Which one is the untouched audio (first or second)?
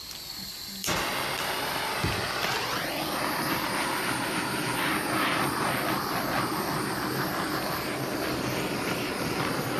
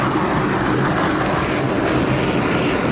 second